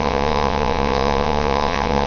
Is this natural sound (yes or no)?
no